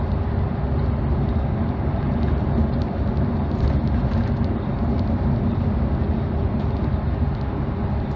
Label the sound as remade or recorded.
recorded